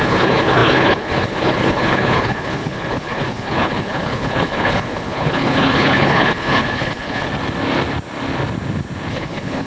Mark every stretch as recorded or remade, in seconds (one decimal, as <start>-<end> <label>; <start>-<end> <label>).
0.0-7.3 remade; 7.3-9.1 recorded; 9.1-9.7 remade